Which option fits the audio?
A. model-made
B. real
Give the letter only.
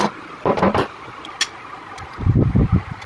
B